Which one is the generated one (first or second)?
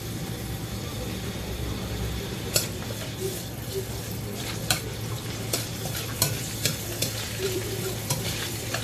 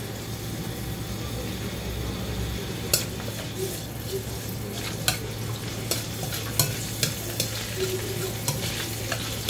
first